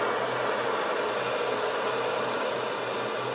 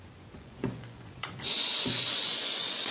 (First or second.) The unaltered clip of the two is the first